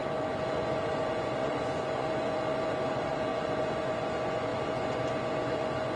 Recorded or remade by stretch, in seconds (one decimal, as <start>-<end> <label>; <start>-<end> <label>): 0.0-6.0 remade